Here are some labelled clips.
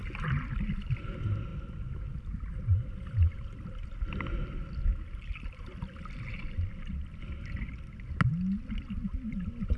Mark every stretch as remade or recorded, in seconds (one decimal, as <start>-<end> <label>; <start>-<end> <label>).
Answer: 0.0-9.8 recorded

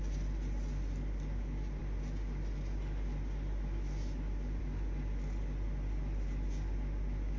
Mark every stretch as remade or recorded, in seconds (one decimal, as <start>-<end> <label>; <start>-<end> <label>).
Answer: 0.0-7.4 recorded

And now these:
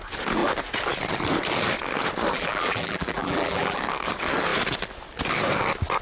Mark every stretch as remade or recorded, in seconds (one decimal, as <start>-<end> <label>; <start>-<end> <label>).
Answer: 0.0-2.3 recorded; 2.3-3.8 remade; 3.8-6.0 recorded

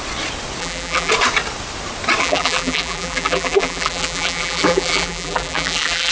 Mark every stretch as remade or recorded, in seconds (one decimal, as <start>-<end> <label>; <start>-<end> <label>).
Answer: 0.0-0.6 recorded; 0.6-1.1 remade; 1.1-2.2 recorded; 2.2-6.1 remade